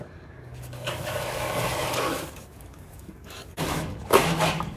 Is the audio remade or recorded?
remade